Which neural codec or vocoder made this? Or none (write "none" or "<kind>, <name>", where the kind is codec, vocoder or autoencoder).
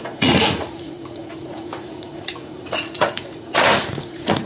vocoder, Vocos